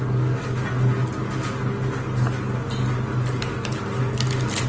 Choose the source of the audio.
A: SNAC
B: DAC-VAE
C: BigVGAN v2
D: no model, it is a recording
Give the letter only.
D